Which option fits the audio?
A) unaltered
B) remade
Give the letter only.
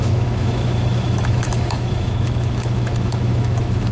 B